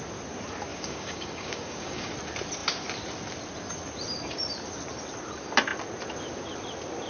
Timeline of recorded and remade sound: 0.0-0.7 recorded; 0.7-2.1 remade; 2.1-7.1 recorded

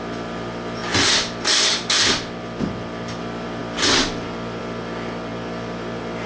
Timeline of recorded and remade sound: 0.0-6.3 recorded